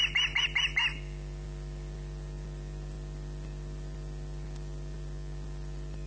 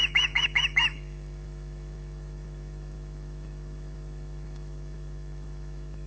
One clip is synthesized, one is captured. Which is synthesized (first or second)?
second